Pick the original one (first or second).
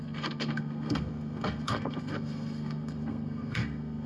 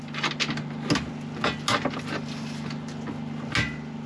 second